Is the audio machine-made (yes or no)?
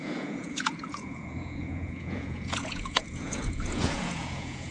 yes